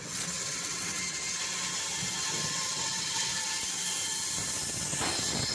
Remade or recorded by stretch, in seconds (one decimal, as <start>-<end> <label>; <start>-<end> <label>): 0.0-1.0 remade; 1.0-2.5 recorded; 2.5-3.3 remade; 3.3-5.5 recorded